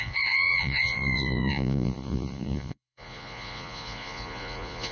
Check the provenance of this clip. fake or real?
fake